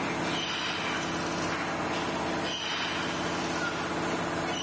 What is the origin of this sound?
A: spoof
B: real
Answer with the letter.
B